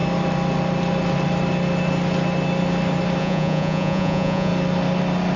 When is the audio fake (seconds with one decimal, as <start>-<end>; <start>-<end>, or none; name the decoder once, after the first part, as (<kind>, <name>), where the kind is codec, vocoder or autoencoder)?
3.2-4.5 (vocoder, Vocos)